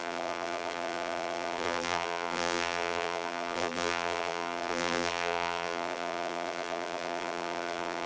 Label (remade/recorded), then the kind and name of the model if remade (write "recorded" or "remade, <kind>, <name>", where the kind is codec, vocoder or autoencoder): remade, vocoder, BigVGAN v2